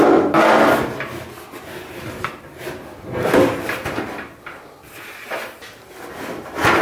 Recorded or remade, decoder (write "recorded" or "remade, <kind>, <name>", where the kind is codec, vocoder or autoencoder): recorded